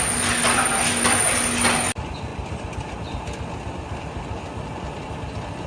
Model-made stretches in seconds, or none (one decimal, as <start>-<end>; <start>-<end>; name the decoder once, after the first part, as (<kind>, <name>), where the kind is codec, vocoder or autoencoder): none

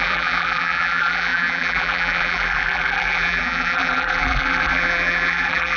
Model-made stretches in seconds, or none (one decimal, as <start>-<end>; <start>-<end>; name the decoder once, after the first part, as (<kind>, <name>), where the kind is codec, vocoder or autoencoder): 0.0-5.8 (vocoder, BigVGAN v2)

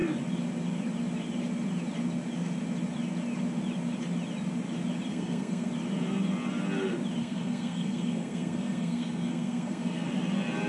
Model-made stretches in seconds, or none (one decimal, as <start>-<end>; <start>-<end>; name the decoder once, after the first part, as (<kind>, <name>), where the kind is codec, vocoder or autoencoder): 5.1-5.7 (codec, SNAC); 7.2-10.1

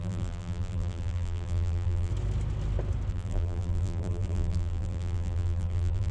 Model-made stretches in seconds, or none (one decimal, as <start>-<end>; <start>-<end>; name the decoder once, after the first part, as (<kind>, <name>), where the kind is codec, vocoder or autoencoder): 0.0-2.1 (vocoder, BigVGAN v2); 3.1-6.1

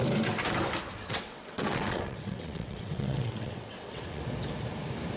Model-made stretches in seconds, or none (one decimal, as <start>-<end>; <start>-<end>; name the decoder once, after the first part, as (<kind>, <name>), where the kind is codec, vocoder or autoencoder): 1.1-4.2 (vocoder, WaveNeXt)

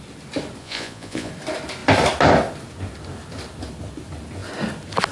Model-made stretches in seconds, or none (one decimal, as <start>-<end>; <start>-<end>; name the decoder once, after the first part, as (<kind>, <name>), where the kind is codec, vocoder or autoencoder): 0.6-1.3 (vocoder, Vocos)